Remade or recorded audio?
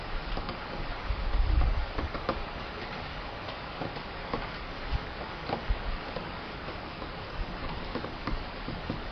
remade